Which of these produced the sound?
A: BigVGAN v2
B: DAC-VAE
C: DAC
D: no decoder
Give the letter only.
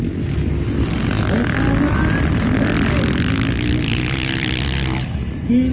D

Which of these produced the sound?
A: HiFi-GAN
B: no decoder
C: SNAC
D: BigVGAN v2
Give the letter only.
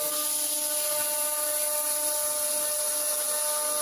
B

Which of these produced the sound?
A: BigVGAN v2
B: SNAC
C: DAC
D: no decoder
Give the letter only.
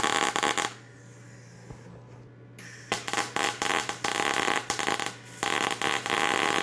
D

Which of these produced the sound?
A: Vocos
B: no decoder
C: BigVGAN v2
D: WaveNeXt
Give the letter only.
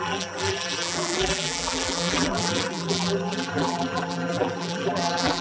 C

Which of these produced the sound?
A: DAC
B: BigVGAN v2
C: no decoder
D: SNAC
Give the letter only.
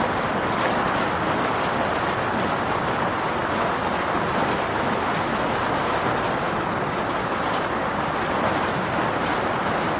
B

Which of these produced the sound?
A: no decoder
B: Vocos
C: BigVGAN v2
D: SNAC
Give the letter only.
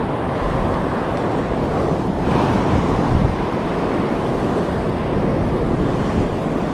A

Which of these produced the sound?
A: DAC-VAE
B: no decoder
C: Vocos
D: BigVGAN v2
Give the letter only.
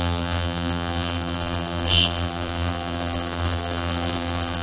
D